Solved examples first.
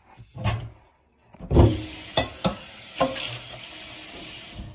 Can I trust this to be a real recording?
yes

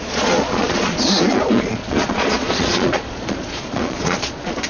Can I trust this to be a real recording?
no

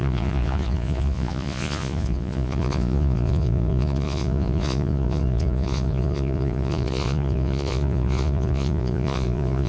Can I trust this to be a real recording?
no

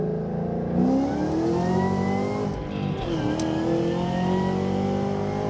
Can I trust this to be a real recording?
yes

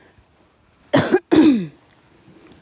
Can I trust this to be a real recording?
yes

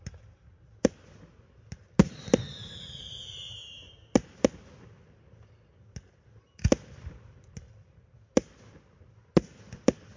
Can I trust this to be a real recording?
yes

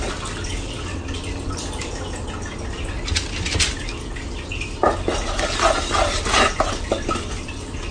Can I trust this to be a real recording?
yes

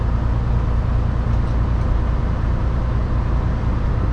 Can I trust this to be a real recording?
yes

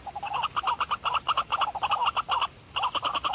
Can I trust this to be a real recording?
yes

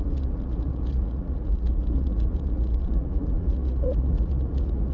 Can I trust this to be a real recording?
no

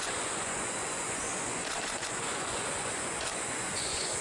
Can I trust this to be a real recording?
no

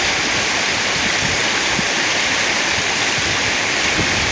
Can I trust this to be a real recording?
yes